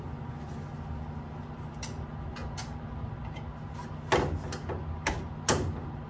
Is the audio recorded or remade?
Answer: recorded